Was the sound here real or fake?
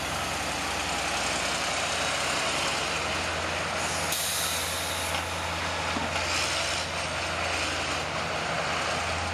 real